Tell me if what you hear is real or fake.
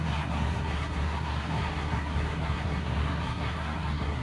fake